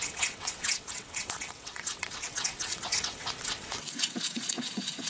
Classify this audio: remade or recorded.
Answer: remade